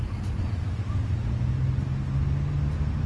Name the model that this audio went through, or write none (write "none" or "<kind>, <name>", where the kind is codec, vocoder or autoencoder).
none